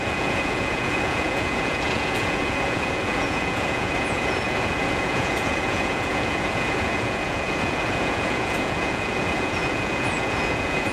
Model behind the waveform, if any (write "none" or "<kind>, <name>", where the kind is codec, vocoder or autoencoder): vocoder, Vocos